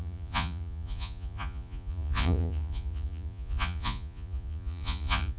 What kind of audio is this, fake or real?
fake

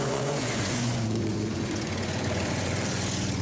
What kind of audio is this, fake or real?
fake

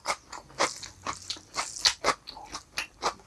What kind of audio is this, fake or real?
real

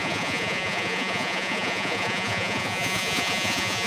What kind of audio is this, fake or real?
fake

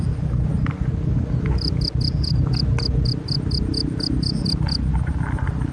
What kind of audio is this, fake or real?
real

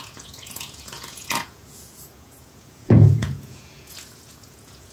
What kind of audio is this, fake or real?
fake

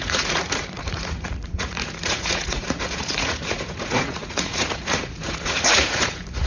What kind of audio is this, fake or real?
fake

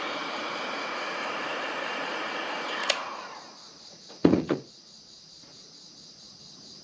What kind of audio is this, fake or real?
fake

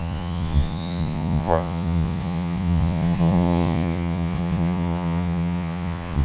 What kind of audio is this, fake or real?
fake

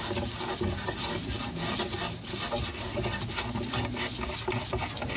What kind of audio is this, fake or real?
real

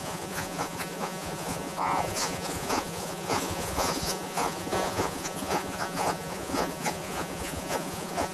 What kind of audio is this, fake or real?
fake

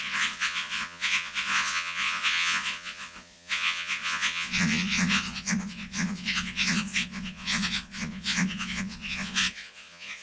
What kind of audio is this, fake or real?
fake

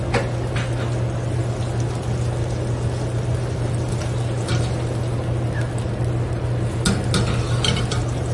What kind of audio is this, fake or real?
real